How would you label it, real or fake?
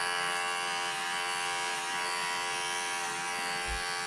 real